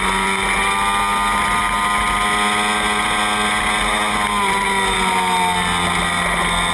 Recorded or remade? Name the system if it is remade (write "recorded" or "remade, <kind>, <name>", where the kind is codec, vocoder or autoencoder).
recorded